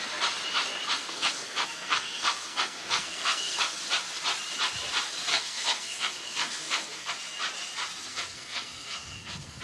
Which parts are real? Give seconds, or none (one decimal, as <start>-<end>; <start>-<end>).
0.0-1.0; 3.8-5.3; 7.1-8.1